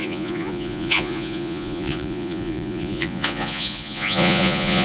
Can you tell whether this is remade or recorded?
remade